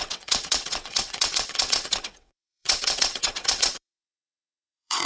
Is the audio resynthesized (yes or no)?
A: yes